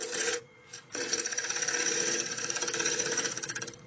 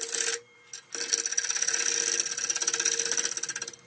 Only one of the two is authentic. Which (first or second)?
second